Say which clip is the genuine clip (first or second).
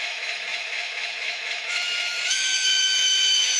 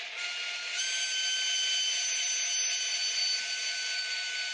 second